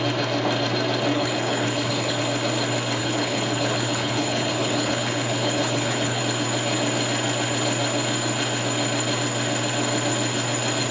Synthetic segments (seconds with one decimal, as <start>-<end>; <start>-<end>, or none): 1.1-2.2; 3.0-6.2